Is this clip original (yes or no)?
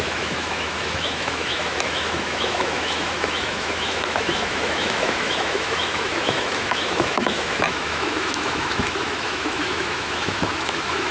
no